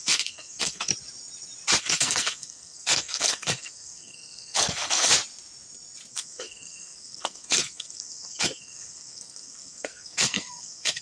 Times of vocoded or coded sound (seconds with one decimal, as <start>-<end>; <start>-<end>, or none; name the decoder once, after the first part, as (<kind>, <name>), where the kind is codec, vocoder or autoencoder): 0.0-0.9 (codec, SNAC); 1.8-5.1; 6.1-11.0